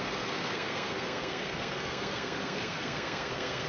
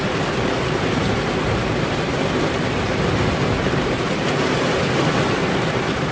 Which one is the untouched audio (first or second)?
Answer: second